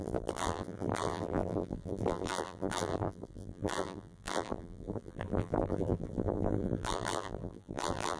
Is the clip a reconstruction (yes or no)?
yes